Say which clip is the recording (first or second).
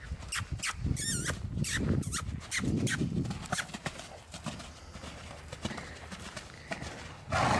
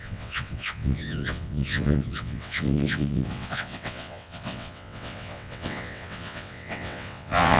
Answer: first